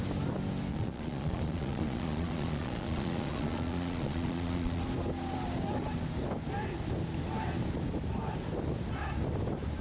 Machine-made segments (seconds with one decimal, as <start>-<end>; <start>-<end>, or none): 0.7-4.8